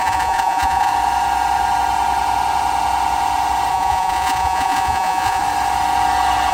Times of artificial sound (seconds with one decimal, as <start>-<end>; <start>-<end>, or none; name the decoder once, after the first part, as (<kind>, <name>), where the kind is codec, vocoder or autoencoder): 0.0-0.9 (vocoder, Vocos); 3.7-5.4